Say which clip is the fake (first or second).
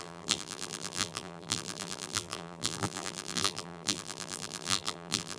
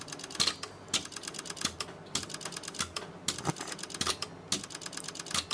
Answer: first